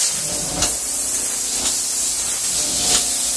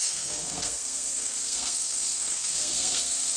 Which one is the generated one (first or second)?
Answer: second